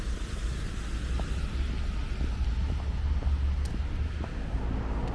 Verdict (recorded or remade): recorded